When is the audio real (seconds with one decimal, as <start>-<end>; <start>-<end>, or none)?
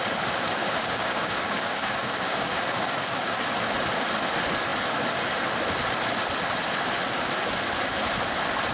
0.0-0.6; 3.4-8.7